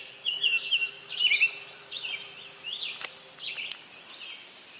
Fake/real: real